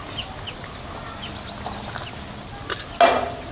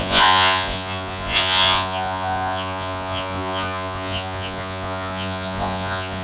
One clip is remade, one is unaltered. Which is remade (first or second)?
second